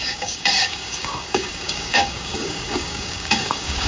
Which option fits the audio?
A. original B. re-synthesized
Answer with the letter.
B